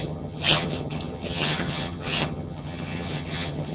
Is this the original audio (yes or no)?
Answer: no